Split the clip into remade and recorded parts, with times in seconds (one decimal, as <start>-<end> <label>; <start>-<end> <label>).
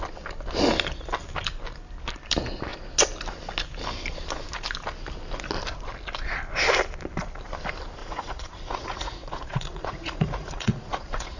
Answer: 0.0-8.0 recorded; 8.0-11.4 remade